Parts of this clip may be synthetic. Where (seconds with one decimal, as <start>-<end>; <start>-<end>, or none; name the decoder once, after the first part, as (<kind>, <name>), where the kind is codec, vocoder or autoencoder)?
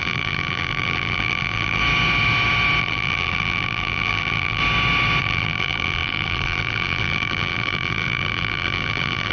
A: 0.0-1.8 (vocoder, BigVGAN v2); 2.8-4.6; 5.2-9.3